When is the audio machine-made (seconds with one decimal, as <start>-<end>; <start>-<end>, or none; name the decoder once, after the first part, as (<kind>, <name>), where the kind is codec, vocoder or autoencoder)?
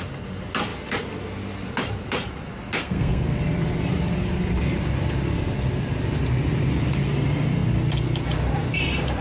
2.8-3.4 (codec, SNAC)